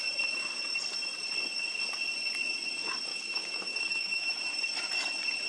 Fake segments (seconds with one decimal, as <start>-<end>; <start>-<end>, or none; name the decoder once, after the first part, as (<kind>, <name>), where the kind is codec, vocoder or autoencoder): 3.1-4.4 (autoencoder, DAC-VAE)